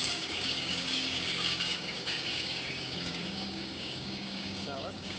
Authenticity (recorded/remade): remade